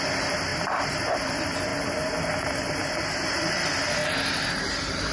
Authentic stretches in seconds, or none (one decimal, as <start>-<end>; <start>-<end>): 0.5-1.2; 4.0-4.5